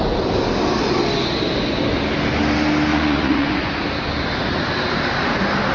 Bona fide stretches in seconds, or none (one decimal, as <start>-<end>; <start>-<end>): 0.0-2.9; 3.7-5.7

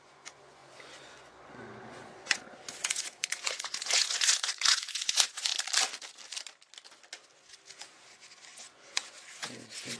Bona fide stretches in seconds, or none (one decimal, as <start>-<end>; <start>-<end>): 5.5-7.8

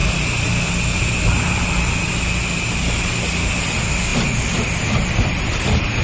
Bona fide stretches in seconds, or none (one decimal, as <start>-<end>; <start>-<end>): 0.0-6.0

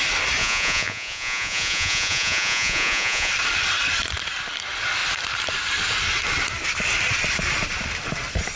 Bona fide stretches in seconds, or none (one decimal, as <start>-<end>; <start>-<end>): 0.0-0.4; 3.3-8.6